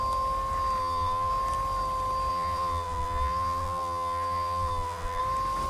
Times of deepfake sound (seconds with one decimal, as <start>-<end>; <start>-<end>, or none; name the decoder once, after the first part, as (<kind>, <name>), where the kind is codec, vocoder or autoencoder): 0.8-1.3 (vocoder, BigVGAN v2); 2.3-5.2